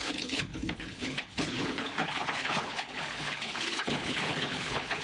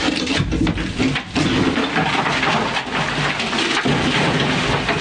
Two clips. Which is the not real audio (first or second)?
first